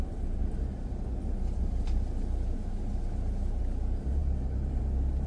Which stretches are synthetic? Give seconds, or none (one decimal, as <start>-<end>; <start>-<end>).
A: none